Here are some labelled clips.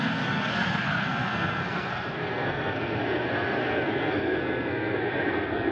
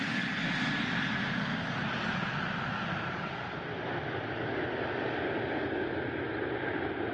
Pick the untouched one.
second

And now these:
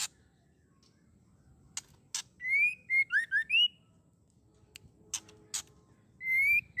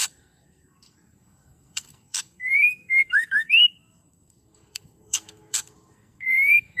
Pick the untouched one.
first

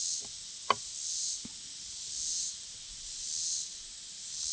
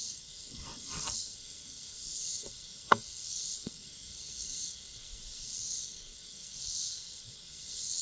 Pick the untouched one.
first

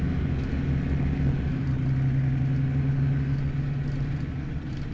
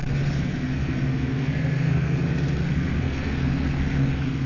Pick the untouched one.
first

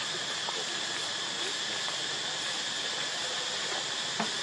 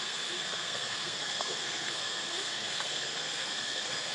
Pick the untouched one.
first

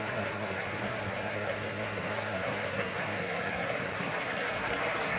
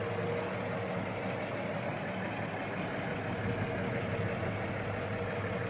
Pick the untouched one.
second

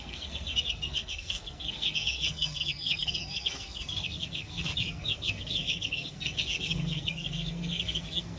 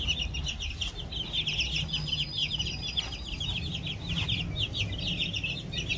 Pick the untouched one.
second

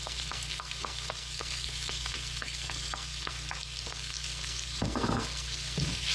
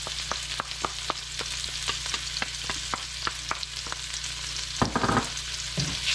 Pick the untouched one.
second